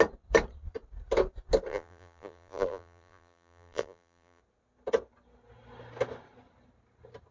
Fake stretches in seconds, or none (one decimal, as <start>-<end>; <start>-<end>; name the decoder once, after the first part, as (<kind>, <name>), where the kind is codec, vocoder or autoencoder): 1.7-4.4 (vocoder, BigVGAN v2)